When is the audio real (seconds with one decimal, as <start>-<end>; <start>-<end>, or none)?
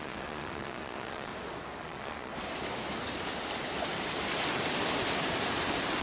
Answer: 1.3-1.8; 2.3-6.0